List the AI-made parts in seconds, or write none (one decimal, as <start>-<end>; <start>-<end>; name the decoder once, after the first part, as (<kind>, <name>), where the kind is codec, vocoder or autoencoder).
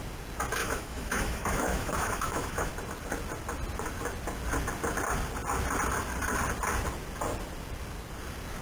0.6-2.7 (autoencoder, DAC-VAE)